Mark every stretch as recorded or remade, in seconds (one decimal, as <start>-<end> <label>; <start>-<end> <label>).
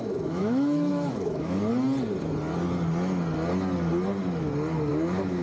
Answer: 0.0-1.7 remade; 1.7-4.9 recorded; 4.9-5.4 remade